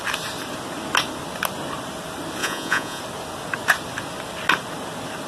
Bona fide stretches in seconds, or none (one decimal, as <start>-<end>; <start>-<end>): 0.0-2.4; 3.0-5.3